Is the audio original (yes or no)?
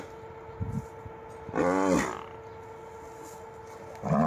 yes